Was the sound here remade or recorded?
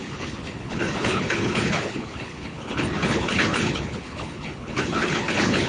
remade